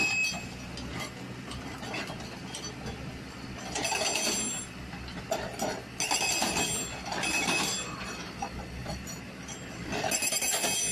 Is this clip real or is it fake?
real